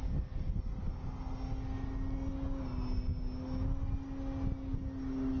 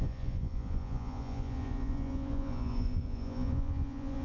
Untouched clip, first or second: first